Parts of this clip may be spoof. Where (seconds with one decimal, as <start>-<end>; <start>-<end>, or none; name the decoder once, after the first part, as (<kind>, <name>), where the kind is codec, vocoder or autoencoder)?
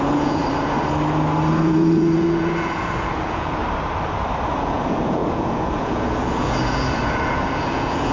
0.0-0.4 (vocoder, Vocos); 1.5-3.6; 4.5-8.1